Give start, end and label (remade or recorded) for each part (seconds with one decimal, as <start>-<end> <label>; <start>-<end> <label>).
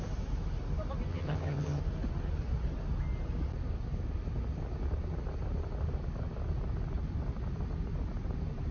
0.0-1.1 recorded; 1.1-1.8 remade; 1.8-8.7 recorded